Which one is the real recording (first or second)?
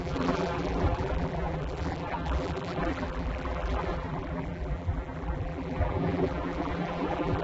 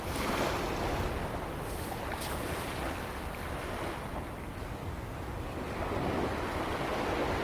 second